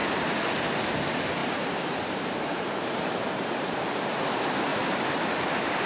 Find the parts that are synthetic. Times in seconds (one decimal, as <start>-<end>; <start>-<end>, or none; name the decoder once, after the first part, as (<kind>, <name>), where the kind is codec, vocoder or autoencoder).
1.4-4.1 (vocoder, BigVGAN v2); 4.7-5.9